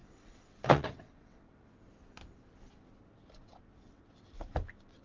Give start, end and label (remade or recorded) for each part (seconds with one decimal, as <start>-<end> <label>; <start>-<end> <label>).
0.0-1.7 remade; 1.7-3.4 recorded; 3.4-4.5 remade; 4.5-5.0 recorded